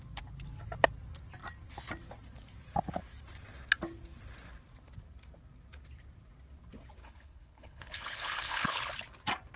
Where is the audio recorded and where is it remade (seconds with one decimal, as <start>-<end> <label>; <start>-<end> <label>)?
0.0-7.0 recorded; 7.0-8.8 remade; 8.8-9.6 recorded